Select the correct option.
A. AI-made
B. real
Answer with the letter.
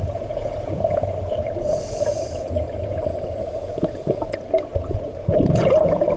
A